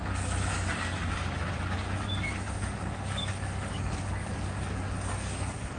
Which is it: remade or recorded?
remade